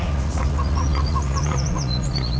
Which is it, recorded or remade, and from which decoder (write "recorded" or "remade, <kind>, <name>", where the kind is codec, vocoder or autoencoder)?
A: remade, vocoder, Vocos